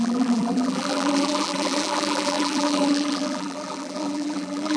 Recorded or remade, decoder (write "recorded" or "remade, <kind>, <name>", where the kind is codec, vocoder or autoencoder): remade, vocoder, BigVGAN v2